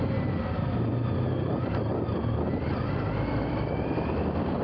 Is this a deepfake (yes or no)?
no